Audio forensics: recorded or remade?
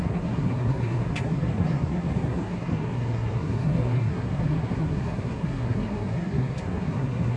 remade